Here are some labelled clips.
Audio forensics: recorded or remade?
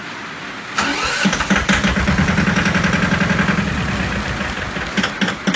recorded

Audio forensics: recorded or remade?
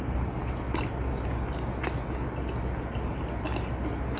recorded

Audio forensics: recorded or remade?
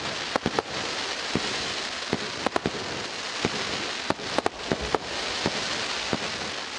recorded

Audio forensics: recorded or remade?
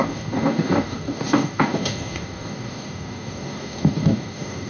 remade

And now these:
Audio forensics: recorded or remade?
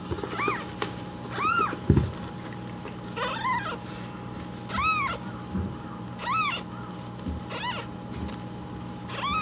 recorded